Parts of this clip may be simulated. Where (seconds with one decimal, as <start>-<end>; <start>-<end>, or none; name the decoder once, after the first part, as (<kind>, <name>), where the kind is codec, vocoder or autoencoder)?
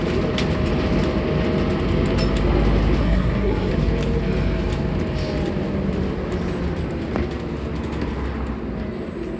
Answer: 3.0-3.7 (codec, SNAC)